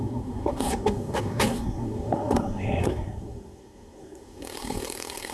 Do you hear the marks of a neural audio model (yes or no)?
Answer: yes